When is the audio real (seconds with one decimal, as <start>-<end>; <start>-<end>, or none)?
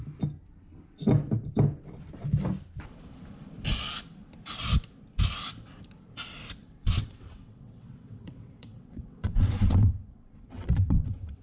0.0-6.6